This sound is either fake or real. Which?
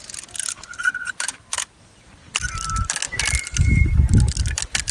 fake